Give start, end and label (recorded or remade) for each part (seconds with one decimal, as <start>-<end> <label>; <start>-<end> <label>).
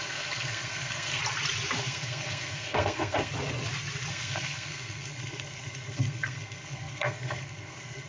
0.0-1.2 remade; 1.2-1.8 recorded; 1.8-3.3 remade; 3.3-4.1 recorded; 4.1-8.1 remade